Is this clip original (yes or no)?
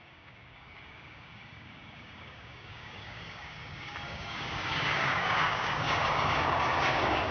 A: no